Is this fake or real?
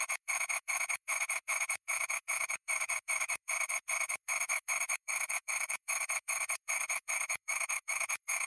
fake